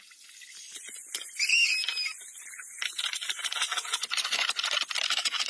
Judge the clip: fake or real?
real